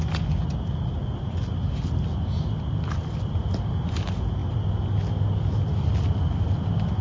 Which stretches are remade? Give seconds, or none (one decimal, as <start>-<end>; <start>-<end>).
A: none